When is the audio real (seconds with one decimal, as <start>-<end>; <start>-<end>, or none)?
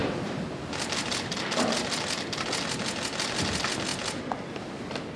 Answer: 0.0-5.2